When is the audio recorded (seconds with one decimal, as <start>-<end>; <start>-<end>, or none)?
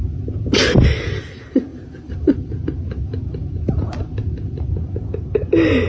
0.0-1.7; 2.6-3.4; 3.9-5.9